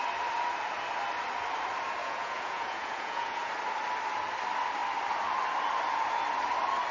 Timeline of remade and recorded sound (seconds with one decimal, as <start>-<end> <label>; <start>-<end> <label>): 0.0-2.0 recorded; 2.0-3.5 remade; 3.5-6.9 recorded